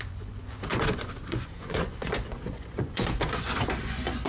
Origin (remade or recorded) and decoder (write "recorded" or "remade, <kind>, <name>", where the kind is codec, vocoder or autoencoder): remade, vocoder, Vocos